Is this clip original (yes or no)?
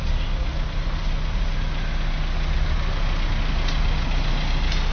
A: yes